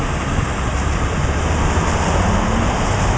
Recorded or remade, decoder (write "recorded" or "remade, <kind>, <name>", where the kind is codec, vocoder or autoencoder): recorded